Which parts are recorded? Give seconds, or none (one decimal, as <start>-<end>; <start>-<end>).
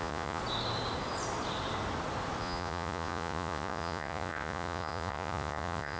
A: 0.4-2.4